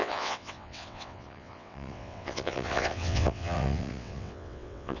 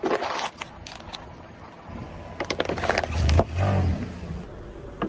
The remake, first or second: first